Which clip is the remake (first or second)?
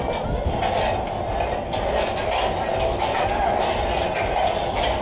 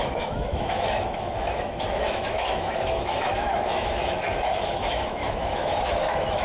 second